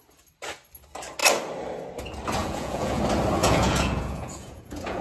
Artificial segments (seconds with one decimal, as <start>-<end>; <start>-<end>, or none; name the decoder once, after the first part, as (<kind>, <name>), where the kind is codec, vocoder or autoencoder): 2.4-3.0 (vocoder, Vocos); 3.4-5.0